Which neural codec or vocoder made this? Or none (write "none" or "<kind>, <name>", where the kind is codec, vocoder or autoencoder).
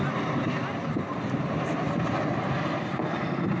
none